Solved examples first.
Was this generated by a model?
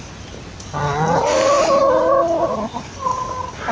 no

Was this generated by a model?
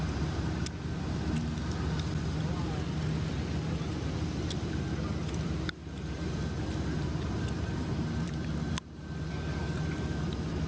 no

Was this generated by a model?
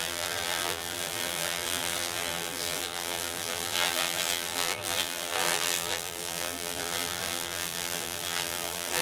yes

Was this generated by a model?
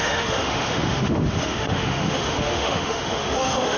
yes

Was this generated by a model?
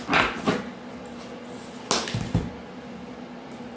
no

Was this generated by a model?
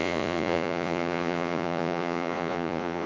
yes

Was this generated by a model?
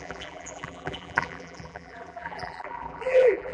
yes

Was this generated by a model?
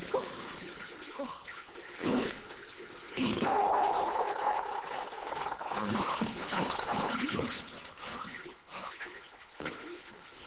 yes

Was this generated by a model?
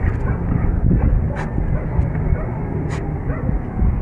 no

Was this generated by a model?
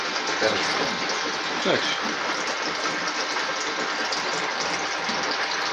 no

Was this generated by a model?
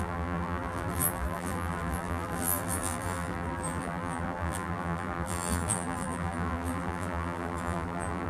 yes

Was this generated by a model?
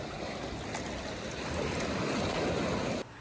no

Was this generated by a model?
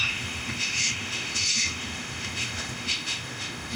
yes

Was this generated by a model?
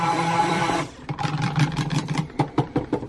yes